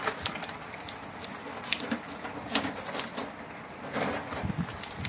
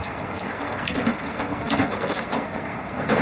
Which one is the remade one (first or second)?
second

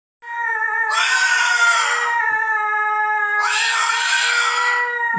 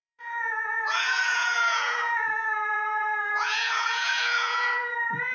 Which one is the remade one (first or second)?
second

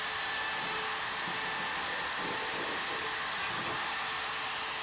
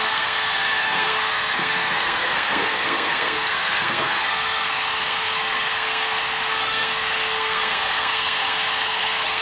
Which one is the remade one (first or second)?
second